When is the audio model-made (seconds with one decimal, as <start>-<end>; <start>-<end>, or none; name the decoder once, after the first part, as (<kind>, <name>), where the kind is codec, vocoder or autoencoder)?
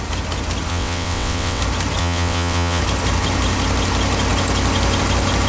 0.7-1.6 (vocoder, WaveNeXt); 2.0-2.8